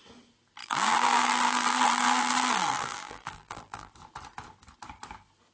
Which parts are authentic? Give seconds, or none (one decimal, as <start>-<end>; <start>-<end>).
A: 0.0-0.6; 3.9-5.5